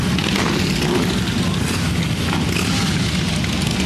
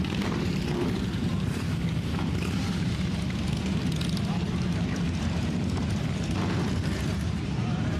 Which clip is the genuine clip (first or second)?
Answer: first